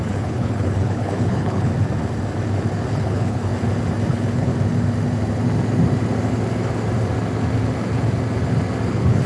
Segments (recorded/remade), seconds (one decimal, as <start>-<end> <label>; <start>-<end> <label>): 0.0-1.7 remade; 1.7-2.9 recorded; 2.9-3.5 remade; 3.5-4.1 recorded; 4.1-4.5 remade; 4.5-8.9 recorded; 8.9-9.3 remade